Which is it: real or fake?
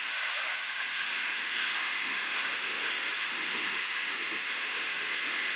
fake